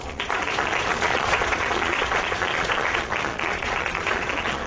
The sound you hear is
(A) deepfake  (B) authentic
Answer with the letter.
A